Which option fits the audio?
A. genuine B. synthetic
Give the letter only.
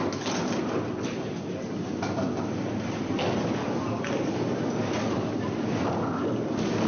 A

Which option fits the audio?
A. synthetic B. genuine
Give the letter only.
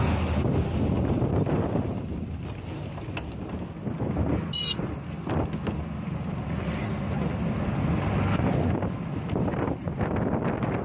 B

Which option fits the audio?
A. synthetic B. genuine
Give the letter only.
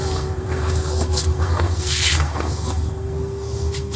A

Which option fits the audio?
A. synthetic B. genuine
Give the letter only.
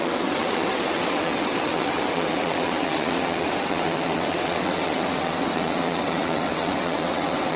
A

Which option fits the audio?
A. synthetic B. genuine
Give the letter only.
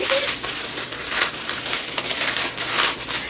B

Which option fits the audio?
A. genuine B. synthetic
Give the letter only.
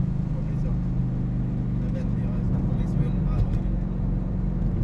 A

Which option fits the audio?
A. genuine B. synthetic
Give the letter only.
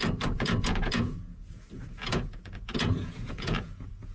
B